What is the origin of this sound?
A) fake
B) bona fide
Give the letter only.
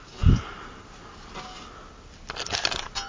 B